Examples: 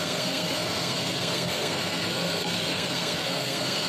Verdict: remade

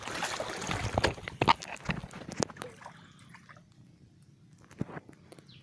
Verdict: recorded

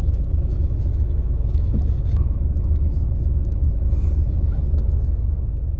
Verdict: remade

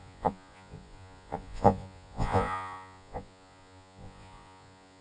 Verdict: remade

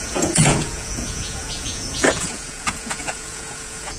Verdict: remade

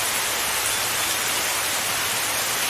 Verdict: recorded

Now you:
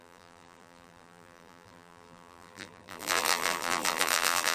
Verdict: remade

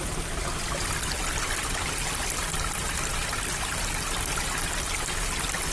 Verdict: recorded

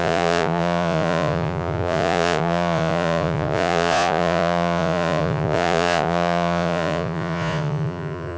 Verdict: remade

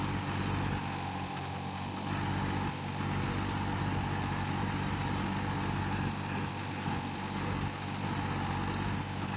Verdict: recorded